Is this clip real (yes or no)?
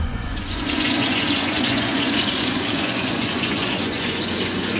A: no